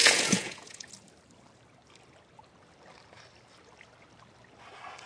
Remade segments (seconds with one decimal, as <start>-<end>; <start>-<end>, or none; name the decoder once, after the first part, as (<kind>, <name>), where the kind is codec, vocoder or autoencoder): 0.0-0.9 (vocoder, Vocos)